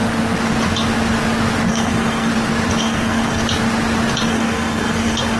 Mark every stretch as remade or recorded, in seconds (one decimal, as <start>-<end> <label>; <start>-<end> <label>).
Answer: 0.0-1.7 recorded; 1.7-2.3 remade; 2.3-2.8 recorded; 2.8-3.4 remade; 3.4-4.3 recorded; 4.3-5.4 remade